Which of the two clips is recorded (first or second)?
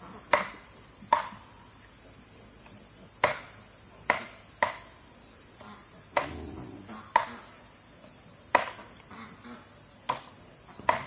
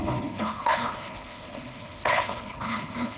first